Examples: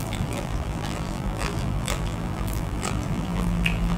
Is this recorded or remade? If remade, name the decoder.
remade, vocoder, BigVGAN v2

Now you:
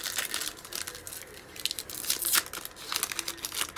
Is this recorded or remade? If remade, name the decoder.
recorded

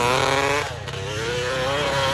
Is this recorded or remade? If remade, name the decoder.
recorded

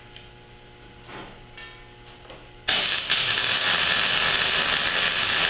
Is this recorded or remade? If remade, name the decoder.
recorded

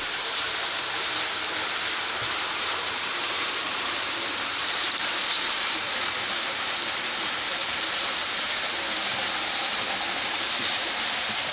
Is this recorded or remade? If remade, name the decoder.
remade, vocoder, BigVGAN v2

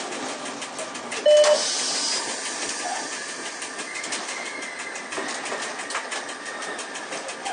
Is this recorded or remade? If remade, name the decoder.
recorded